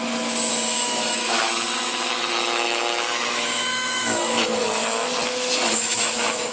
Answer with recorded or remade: remade